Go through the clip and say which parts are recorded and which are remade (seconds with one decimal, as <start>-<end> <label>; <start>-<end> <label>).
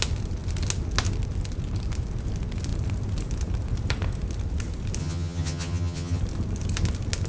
0.0-5.0 recorded; 5.0-6.2 remade; 6.2-7.3 recorded